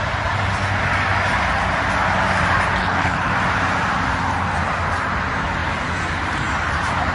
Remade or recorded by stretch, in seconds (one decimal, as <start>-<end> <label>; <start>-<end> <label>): 0.0-2.8 recorded; 2.8-3.3 remade; 3.3-7.1 recorded